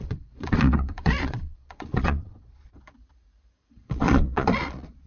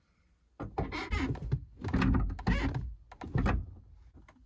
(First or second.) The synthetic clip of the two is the first